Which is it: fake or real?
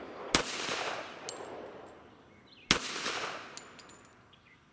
real